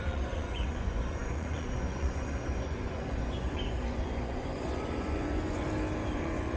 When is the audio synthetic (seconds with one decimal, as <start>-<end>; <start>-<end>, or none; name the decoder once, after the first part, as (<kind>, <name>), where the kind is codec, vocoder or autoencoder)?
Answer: 0.0-5.6 (vocoder, Vocos); 6.1-6.6